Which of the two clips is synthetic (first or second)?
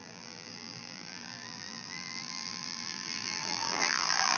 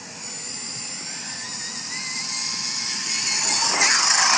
first